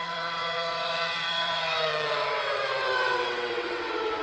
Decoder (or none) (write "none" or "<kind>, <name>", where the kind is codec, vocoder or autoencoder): vocoder, WaveNeXt